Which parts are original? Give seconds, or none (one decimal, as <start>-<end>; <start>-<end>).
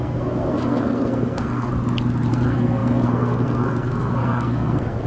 1.7-2.3